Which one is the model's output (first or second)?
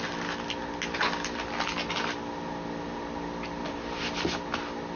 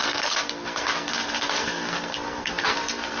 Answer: second